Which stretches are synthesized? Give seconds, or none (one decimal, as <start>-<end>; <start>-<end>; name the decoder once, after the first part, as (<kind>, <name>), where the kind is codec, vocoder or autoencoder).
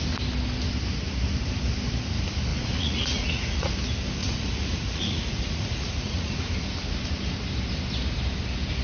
2.5-3.7 (vocoder, Vocos); 4.2-6.5